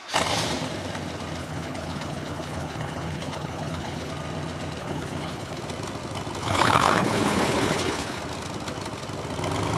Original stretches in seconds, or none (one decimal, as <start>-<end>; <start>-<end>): 0.0-1.4; 4.1-4.8; 5.6-6.4; 8.2-9.8